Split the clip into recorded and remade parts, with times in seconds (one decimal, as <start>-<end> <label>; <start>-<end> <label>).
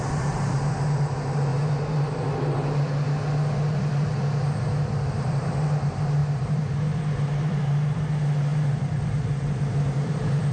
0.0-1.5 remade; 1.5-5.2 recorded; 5.2-10.5 remade